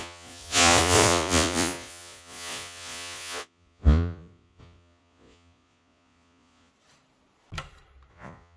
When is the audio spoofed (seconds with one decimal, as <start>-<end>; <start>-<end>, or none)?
0.0-6.7; 8.1-8.6